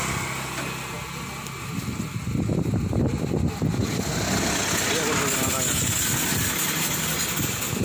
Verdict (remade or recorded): recorded